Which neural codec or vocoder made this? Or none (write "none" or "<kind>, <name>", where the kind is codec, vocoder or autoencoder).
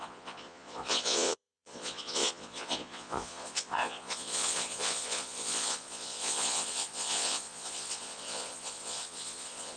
vocoder, Vocos